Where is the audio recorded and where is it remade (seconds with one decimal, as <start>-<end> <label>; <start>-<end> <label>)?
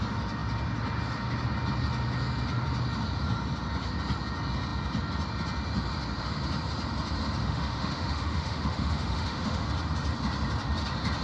0.0-7.4 recorded; 7.4-9.7 remade; 9.7-11.2 recorded